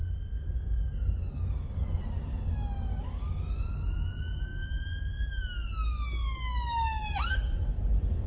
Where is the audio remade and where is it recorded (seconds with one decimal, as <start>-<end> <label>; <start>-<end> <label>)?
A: 0.0-1.8 remade; 1.8-2.3 recorded; 2.3-3.6 remade; 3.6-8.3 recorded